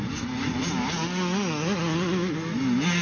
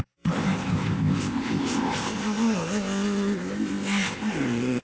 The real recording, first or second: first